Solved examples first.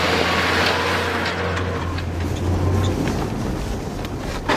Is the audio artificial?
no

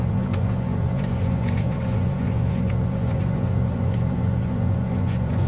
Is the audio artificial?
yes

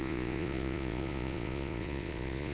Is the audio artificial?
yes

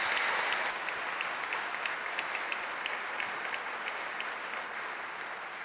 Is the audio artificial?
no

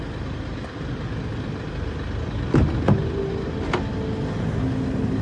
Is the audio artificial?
no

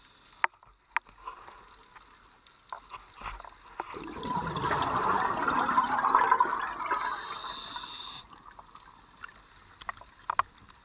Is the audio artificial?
no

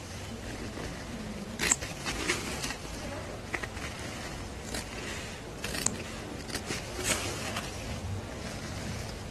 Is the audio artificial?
no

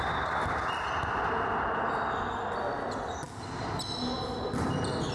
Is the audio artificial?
no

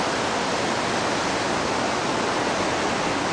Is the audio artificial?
no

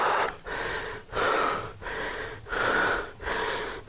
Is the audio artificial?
no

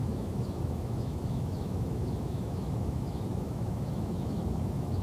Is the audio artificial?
yes